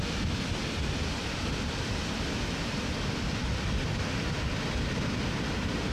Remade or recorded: recorded